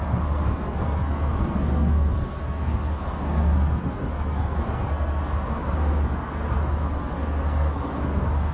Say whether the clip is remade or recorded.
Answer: remade